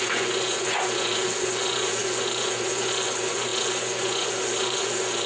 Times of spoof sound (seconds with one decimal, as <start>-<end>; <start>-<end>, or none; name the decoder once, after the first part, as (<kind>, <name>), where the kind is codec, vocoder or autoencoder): 0.0-5.3 (vocoder, Vocos)

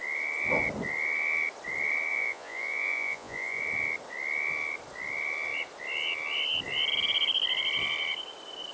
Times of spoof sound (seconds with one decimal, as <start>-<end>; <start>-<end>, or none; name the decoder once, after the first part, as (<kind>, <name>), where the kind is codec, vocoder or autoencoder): 2.1-3.6 (vocoder, Vocos)

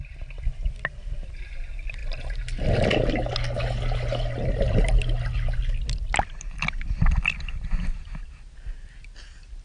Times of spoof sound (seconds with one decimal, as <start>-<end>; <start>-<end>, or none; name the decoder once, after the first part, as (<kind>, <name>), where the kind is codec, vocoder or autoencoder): none

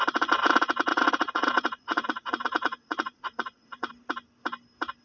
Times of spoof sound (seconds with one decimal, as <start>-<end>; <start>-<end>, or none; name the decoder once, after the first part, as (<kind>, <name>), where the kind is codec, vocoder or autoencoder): 0.9-3.9 (vocoder, Vocos)

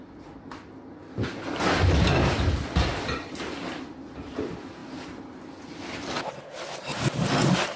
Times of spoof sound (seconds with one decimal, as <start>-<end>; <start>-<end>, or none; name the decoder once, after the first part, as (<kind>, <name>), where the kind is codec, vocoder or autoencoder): none

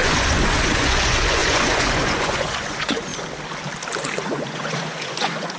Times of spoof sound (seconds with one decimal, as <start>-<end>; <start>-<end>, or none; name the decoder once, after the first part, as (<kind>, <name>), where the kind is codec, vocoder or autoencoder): 0.0-3.1 (vocoder, Vocos); 4.2-5.6